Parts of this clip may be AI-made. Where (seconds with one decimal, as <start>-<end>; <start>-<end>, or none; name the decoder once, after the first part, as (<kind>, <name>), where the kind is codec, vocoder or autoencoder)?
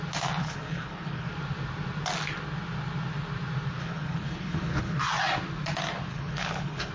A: 0.4-1.3 (codec, HILCodec); 3.8-5.0; 6.1-6.9